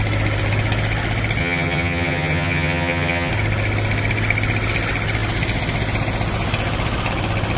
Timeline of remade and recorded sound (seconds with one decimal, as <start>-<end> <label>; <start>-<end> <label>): 0.0-1.4 recorded; 1.4-3.3 remade; 3.3-7.6 recorded

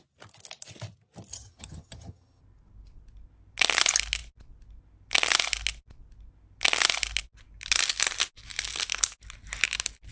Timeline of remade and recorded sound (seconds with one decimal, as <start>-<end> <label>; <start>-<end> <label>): 0.0-1.3 recorded; 1.3-2.4 remade; 2.4-10.1 recorded

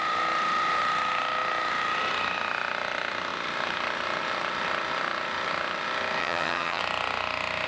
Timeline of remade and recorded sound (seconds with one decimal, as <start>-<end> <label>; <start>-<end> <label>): 0.0-6.2 recorded; 6.2-6.8 remade; 6.8-7.7 recorded

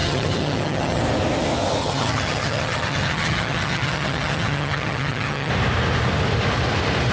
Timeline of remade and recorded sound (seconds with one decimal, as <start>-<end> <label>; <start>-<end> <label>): 0.0-1.0 remade; 1.0-1.8 recorded; 1.8-5.5 remade; 5.5-7.1 recorded

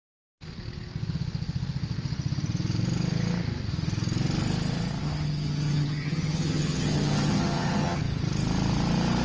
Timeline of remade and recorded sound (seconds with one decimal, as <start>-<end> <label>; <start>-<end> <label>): 0.0-5.0 recorded; 5.0-8.0 remade; 8.0-9.2 recorded

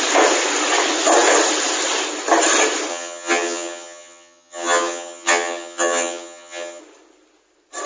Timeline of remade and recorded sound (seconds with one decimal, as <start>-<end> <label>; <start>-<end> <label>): 0.0-2.9 recorded; 2.9-6.8 remade; 6.8-7.9 recorded

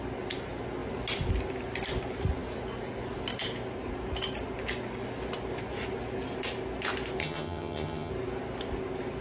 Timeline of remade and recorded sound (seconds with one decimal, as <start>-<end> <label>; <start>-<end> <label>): 0.0-7.2 recorded; 7.2-8.1 remade; 8.1-9.2 recorded